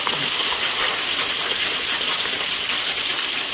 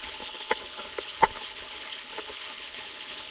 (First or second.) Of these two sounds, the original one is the first